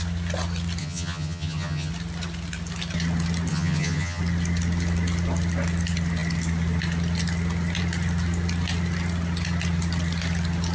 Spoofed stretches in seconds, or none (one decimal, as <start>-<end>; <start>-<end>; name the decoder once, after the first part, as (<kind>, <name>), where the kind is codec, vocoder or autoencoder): 0.8-1.9 (vocoder, HiFi-GAN); 3.5-4.2

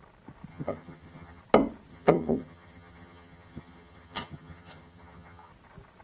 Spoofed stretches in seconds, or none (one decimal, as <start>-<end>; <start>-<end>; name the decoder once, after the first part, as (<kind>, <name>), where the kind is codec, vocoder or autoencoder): 0.5-1.4 (vocoder, HiFi-GAN); 1.9-5.5

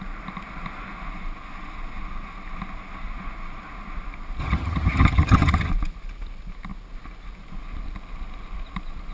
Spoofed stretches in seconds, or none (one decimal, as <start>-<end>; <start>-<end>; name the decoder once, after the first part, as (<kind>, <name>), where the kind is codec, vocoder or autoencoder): 4.4-5.7 (vocoder, HiFi-GAN)

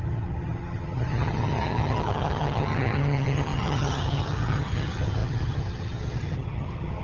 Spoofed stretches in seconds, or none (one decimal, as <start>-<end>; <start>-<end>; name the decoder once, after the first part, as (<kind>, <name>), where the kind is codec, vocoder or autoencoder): 0.0-7.0 (vocoder, HiFi-GAN)

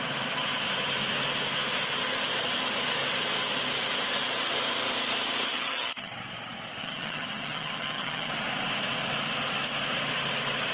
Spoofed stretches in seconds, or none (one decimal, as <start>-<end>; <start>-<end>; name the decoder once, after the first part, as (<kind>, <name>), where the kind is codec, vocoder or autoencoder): 5.5-6.1 (vocoder, HiFi-GAN); 6.8-8.3

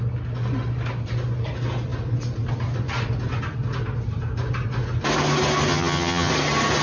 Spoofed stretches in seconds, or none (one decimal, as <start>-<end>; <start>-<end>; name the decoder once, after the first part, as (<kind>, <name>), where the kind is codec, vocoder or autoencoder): 5.7-6.3 (vocoder, HiFi-GAN)

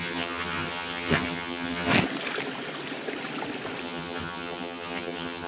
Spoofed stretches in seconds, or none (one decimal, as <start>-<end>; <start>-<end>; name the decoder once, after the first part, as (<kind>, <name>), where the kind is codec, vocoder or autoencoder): 0.0-1.9 (vocoder, HiFi-GAN); 3.8-5.5

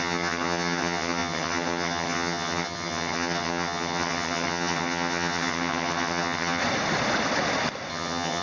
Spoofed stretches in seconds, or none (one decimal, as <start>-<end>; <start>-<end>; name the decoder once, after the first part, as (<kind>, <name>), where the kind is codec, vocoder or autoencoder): 0.0-6.6 (vocoder, HiFi-GAN); 7.9-8.4